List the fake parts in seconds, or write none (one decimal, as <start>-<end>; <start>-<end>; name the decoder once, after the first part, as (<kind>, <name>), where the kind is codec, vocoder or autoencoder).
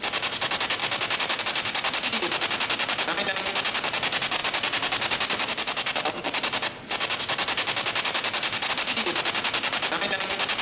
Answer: none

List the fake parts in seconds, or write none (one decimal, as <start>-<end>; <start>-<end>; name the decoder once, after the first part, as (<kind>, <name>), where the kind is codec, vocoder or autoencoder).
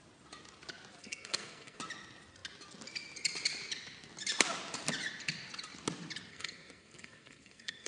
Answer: 1.0-1.8 (codec, SNAC); 6.3-7.9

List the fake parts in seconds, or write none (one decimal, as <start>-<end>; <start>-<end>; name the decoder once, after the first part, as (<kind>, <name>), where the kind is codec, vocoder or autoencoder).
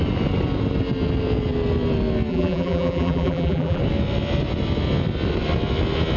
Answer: 2.3-3.8 (vocoder, BigVGAN v2)